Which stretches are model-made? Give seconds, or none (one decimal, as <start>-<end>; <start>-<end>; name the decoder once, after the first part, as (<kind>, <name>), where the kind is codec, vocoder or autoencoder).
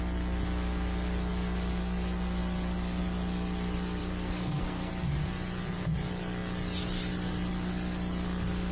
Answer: 4.0-4.9 (codec, SNAC)